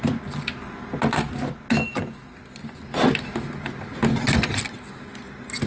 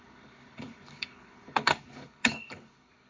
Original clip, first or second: first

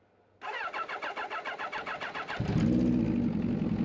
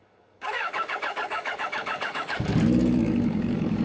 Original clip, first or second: first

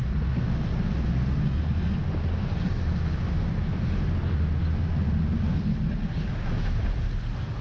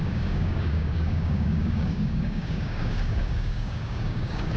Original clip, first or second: first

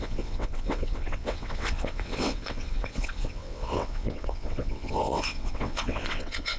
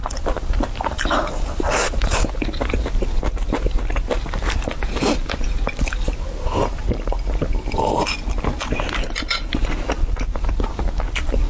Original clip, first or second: second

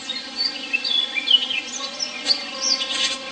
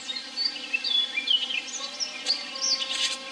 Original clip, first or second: second